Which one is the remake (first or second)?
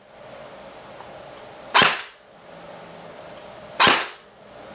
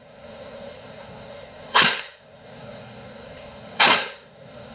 second